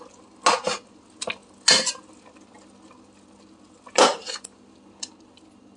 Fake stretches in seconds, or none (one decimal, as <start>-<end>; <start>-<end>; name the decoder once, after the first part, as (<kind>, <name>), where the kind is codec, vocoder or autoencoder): none